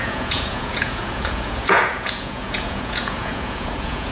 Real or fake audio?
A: fake